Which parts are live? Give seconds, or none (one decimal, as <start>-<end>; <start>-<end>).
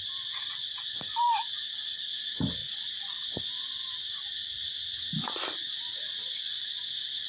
0.0-2.6; 3.7-7.3